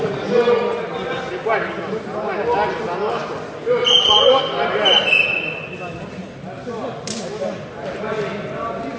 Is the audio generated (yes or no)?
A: no